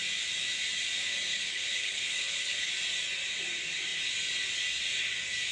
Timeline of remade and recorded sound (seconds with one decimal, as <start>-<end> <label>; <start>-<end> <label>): 0.0-1.3 recorded; 1.3-2.7 remade; 2.7-5.5 recorded